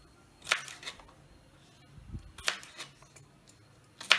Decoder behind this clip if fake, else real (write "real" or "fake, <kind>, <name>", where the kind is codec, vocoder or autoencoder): real